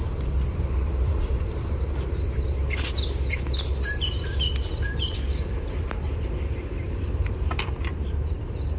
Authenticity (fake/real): fake